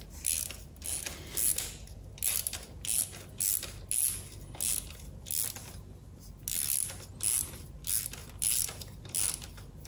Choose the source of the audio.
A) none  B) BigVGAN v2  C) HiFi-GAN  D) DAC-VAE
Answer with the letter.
A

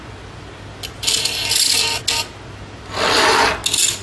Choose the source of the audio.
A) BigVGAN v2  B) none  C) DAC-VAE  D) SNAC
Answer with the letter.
B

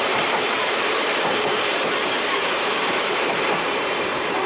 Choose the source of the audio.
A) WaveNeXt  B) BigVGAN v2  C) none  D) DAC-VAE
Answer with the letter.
B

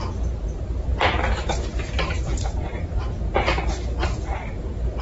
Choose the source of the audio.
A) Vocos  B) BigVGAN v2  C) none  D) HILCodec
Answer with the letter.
C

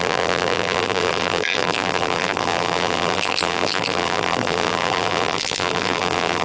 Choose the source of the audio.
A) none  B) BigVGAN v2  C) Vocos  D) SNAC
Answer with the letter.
B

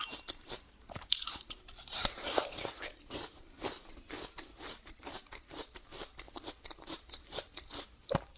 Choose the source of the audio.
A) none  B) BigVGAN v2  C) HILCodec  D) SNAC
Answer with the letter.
B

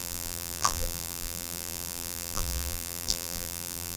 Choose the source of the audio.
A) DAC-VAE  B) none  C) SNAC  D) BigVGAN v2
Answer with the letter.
D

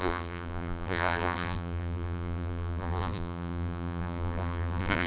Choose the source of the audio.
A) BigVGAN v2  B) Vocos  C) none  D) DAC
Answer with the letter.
A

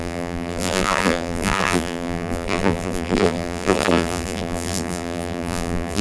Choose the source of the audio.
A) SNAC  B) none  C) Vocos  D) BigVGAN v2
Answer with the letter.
D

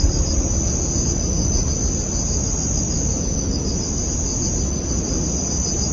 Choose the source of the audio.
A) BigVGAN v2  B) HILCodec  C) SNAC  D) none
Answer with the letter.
D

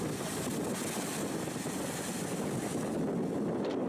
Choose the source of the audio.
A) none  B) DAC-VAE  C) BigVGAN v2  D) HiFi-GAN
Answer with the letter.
A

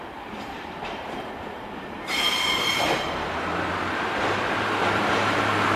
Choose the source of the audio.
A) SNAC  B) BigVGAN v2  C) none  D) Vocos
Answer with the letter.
B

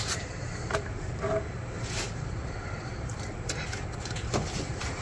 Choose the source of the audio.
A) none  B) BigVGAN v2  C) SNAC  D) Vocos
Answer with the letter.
B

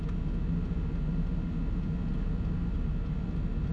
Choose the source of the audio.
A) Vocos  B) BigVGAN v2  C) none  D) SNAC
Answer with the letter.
C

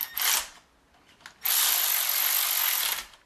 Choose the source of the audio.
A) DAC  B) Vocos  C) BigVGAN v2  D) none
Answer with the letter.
D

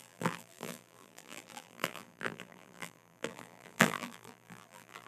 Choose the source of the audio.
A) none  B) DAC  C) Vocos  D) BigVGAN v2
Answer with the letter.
D